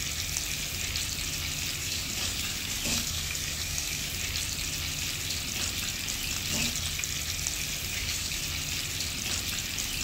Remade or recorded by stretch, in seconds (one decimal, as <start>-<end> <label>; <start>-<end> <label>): 0.0-1.8 recorded; 1.8-4.1 remade; 4.1-7.9 recorded; 7.9-8.4 remade; 8.4-10.0 recorded